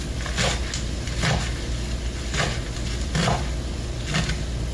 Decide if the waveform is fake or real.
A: real